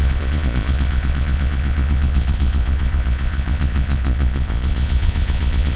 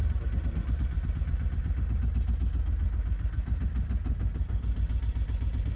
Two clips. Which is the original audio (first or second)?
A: second